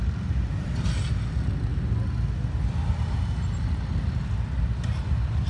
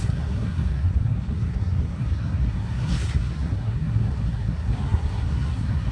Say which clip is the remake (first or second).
second